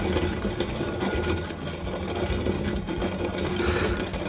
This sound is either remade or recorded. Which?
recorded